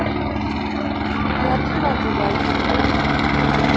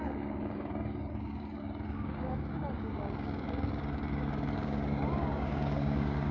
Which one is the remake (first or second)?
second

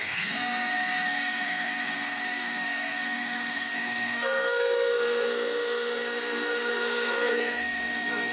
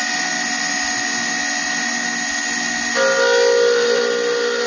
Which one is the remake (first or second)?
first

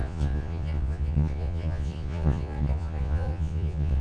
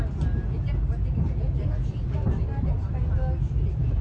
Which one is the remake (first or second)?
first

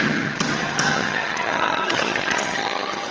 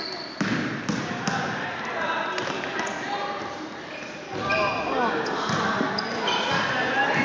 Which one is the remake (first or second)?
first